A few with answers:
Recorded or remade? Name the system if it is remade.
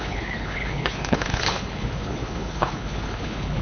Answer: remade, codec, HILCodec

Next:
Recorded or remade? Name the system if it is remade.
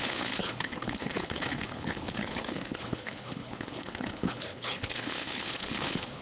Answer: remade, codec, HILCodec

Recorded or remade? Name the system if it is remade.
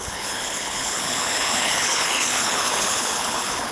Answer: remade, codec, HILCodec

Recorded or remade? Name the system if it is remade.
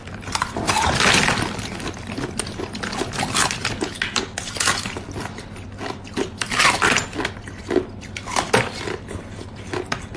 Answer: recorded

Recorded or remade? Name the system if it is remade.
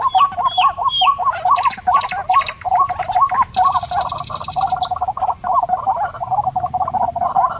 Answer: recorded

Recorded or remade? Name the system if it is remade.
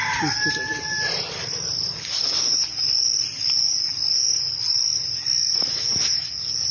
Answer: recorded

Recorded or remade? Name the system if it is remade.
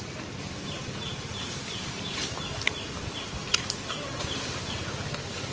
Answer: recorded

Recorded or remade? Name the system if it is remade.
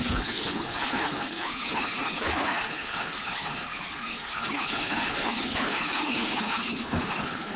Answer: remade, codec, HILCodec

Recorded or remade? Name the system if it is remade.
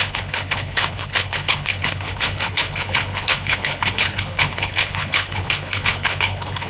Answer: remade, codec, HILCodec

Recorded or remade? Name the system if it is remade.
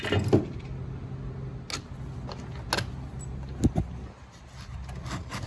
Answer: recorded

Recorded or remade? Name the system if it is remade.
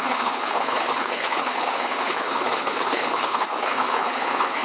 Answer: remade, codec, HILCodec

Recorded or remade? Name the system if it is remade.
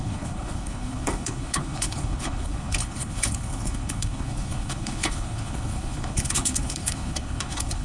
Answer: remade, codec, HILCodec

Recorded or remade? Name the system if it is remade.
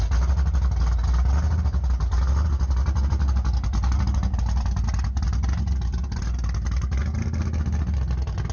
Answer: recorded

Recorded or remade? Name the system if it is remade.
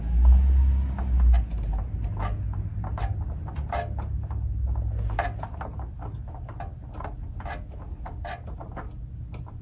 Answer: recorded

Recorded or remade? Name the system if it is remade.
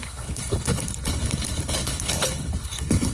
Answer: remade, codec, HILCodec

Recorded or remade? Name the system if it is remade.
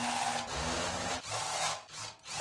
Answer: recorded